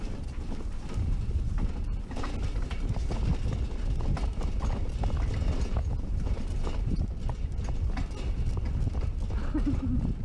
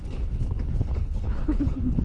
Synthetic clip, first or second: second